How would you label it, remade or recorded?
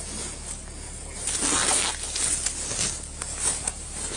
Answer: recorded